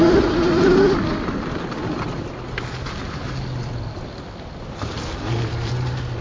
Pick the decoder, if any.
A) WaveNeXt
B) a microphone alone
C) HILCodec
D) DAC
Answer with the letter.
B